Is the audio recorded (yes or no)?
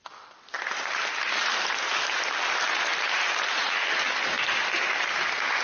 yes